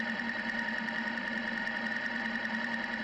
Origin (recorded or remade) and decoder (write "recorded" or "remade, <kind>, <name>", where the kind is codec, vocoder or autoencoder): recorded